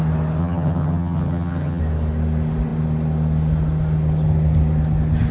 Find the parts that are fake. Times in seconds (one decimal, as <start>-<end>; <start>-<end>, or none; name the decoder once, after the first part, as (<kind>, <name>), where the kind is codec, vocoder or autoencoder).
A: 0.4-1.8 (vocoder, HiFi-GAN)